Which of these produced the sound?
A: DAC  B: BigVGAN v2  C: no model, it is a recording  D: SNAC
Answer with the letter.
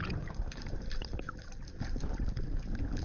B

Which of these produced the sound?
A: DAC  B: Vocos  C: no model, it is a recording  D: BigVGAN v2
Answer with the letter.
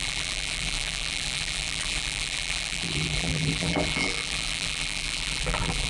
D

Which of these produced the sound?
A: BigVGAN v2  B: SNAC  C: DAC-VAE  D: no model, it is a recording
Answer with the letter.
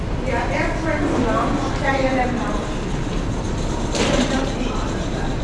A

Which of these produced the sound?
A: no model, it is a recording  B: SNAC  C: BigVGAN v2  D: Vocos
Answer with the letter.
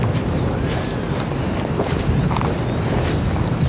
A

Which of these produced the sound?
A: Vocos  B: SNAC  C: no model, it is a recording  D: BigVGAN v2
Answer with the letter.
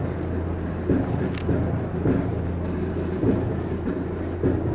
C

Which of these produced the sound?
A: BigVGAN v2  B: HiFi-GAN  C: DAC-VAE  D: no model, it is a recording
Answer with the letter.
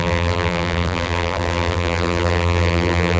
A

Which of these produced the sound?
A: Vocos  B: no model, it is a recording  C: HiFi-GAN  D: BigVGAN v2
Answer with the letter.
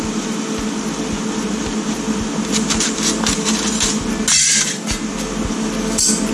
B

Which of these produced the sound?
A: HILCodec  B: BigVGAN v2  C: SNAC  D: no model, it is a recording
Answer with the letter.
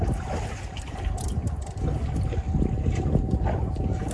B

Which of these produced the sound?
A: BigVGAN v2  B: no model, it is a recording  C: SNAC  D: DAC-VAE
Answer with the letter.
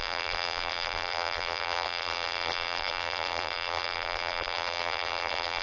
A